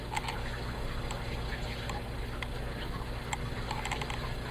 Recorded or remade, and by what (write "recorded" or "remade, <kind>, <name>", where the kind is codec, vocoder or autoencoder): recorded